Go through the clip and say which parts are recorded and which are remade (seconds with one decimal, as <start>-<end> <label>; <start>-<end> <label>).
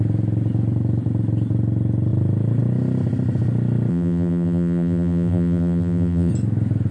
0.0-3.9 recorded; 3.9-6.3 remade; 6.3-6.9 recorded